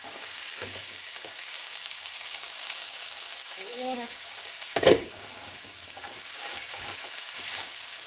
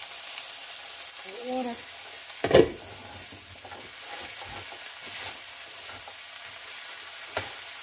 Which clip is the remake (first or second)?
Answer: first